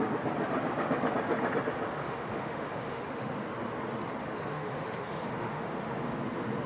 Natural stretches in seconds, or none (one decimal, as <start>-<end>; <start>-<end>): 0.0-1.9; 3.3-4.2; 6.2-6.7